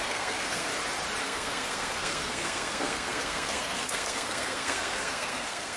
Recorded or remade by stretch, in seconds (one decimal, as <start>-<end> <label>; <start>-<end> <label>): 0.0-0.7 remade; 0.7-1.2 recorded; 1.2-5.8 remade